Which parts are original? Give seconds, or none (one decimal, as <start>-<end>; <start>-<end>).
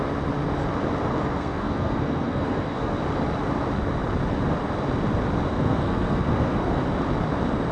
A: 0.0-1.4; 3.0-5.5; 6.8-7.7